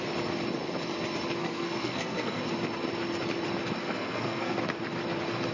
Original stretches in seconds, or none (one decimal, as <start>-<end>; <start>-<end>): 0.0-1.4; 2.4-3.8; 4.6-5.5